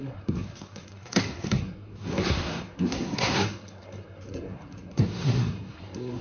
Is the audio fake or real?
fake